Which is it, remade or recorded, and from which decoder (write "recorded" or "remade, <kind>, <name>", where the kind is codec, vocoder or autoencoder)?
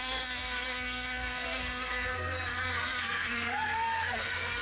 remade, codec, SNAC